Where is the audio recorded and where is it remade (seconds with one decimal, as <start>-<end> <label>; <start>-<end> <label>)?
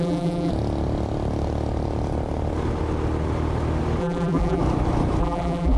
0.0-0.5 remade; 0.5-4.0 recorded; 4.0-4.6 remade; 4.6-5.2 recorded; 5.2-5.8 remade